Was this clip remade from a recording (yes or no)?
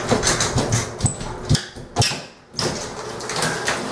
no